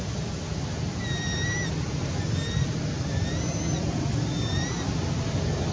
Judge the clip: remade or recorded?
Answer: recorded